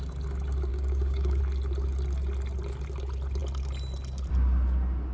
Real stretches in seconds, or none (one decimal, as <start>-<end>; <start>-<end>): 0.0-0.7; 1.4-5.1